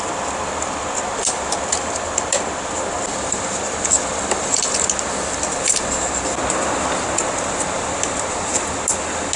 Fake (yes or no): no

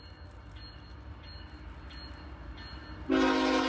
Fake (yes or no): no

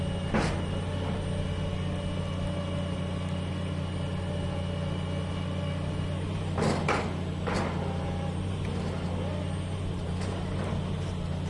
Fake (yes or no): no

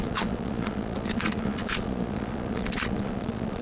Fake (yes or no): yes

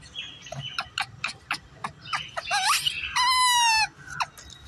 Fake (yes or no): no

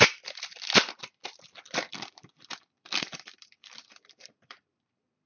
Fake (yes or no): yes